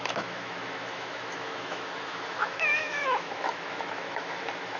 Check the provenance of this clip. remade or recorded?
remade